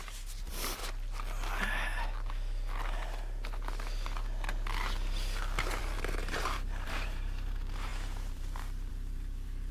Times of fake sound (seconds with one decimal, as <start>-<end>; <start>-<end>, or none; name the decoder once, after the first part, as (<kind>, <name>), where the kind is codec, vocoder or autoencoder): 0.0-0.8 (vocoder, BigVGAN v2); 5.8-9.7